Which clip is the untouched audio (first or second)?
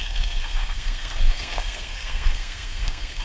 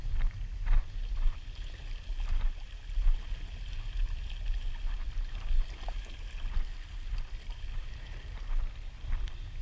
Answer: second